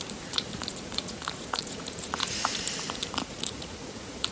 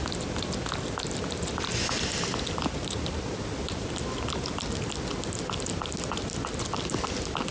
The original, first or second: second